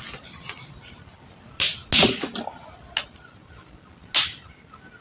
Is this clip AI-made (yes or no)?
no